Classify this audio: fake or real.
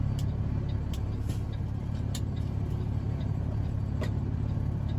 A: real